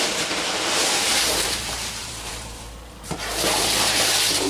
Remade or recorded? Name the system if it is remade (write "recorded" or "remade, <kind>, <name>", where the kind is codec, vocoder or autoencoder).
remade, vocoder, BigVGAN v2